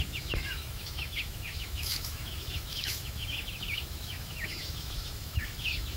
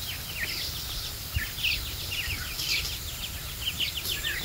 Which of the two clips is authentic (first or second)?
second